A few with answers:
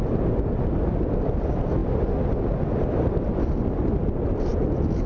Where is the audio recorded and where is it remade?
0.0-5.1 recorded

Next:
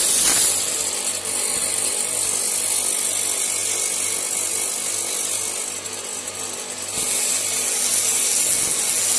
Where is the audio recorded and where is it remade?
0.0-9.2 recorded

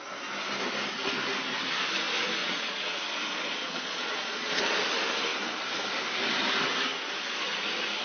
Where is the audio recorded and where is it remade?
0.0-2.4 recorded; 2.4-3.0 remade; 3.0-3.6 recorded; 3.6-4.6 remade; 4.6-8.0 recorded

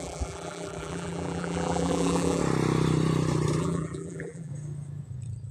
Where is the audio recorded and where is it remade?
0.0-2.4 remade; 2.4-3.6 recorded; 3.6-4.5 remade; 4.5-5.5 recorded

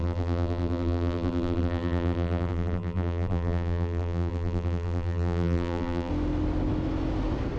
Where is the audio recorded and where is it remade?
0.0-6.1 remade; 6.1-7.6 recorded

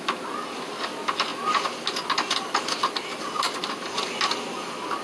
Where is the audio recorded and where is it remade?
0.0-5.0 recorded